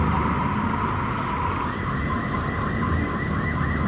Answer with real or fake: real